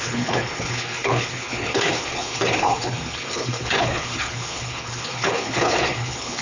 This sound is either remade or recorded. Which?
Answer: remade